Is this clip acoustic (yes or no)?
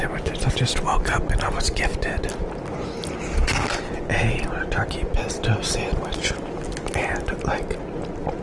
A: yes